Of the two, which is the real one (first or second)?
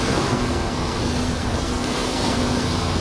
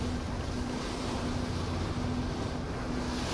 second